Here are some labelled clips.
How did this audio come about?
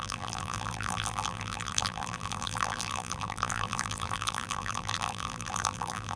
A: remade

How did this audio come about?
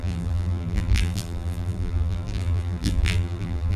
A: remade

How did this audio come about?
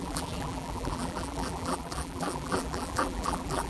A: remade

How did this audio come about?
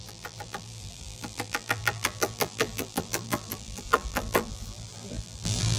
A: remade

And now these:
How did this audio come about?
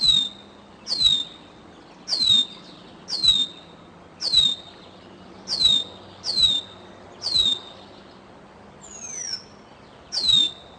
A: recorded